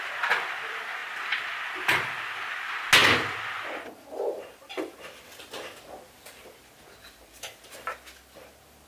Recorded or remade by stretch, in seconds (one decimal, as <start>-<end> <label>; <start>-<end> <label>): 0.0-8.9 recorded

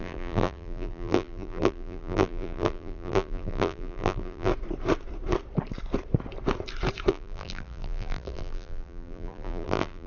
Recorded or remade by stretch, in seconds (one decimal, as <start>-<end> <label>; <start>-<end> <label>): 0.0-4.5 remade; 4.5-7.1 recorded; 7.1-10.1 remade

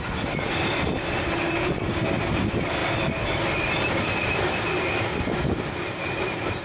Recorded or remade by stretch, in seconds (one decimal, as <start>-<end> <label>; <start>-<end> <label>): 0.0-2.8 remade; 2.8-5.5 recorded; 5.5-6.6 remade

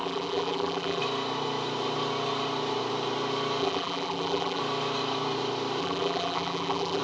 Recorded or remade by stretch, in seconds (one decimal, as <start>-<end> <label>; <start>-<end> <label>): 0.0-1.0 remade; 1.0-3.6 recorded; 3.6-4.6 remade; 4.6-5.8 recorded; 5.8-7.0 remade

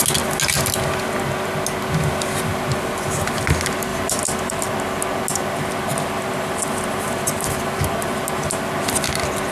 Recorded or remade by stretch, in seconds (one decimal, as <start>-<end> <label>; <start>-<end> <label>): 0.0-3.9 recorded; 3.9-4.5 remade; 4.5-5.9 recorded; 5.9-8.1 remade; 8.1-9.5 recorded

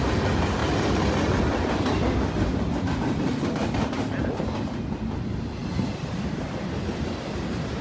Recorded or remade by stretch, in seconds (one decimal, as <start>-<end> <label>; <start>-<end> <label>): 0.0-7.8 recorded